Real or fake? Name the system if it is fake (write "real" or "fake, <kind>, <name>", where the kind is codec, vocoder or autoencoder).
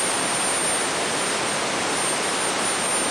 real